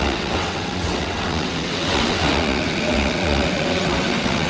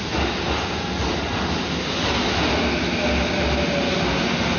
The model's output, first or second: first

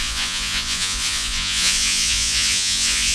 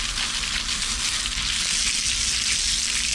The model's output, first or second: first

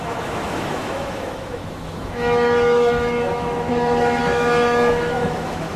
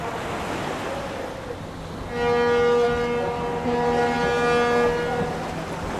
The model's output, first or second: first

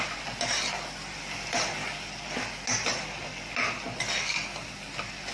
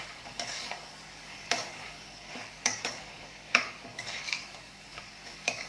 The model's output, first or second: second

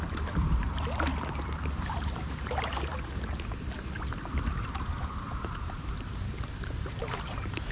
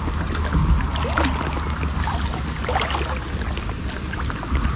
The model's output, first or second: first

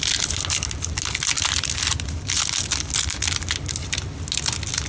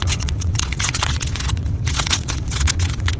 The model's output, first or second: second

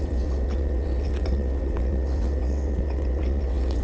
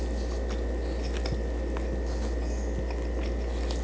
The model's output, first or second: first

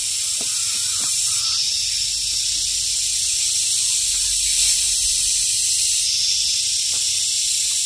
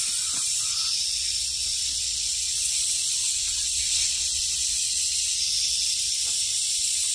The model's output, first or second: second